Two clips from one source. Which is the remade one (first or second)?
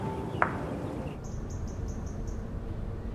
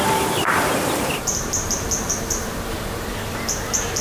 second